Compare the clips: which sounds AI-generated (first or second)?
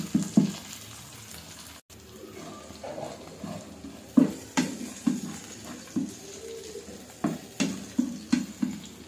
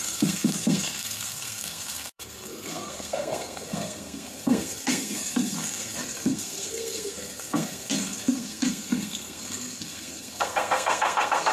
second